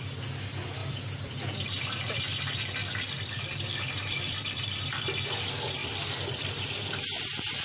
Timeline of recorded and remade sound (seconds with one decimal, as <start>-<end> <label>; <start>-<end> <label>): 0.0-0.8 recorded; 0.8-2.2 remade; 2.2-2.8 recorded; 2.8-5.0 remade; 5.0-5.8 recorded; 5.8-7.6 remade